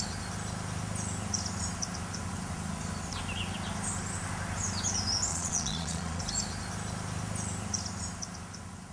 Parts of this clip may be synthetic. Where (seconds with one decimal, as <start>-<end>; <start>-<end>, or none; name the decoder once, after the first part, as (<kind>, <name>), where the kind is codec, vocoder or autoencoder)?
5.3-6.2 (vocoder, Vocos)